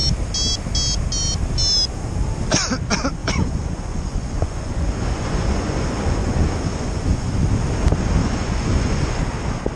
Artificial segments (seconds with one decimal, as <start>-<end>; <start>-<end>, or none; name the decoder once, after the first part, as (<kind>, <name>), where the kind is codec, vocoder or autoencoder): 3.2-7.3 (vocoder, Vocos); 8.2-9.2